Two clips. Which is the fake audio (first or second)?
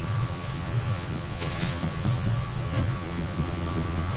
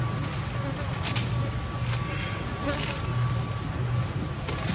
first